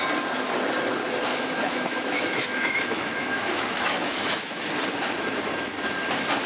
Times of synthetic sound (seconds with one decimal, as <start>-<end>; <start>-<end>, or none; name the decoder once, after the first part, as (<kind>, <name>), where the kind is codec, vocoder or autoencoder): 1.3-4.7 (autoencoder, DAC-VAE)